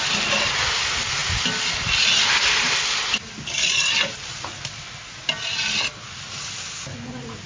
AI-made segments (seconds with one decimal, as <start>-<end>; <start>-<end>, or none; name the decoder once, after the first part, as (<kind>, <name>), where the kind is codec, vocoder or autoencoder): none